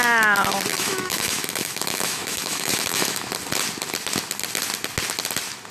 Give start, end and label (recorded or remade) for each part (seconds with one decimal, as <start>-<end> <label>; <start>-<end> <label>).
0.0-0.7 recorded; 0.7-3.2 remade; 3.2-5.7 recorded